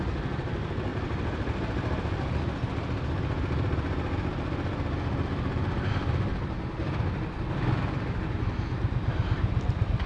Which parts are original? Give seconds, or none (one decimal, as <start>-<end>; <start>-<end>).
0.0-10.1